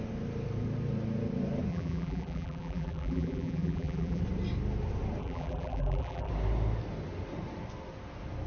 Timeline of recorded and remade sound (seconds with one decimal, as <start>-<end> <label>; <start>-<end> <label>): 0.0-1.7 recorded; 1.7-4.2 remade; 4.2-5.2 recorded; 5.2-6.3 remade; 6.3-8.5 recorded